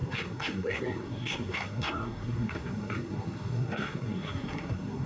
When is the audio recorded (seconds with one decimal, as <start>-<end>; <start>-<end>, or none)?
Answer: none